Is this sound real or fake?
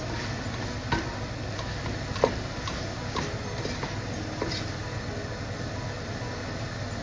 real